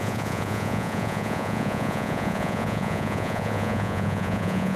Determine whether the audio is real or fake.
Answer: fake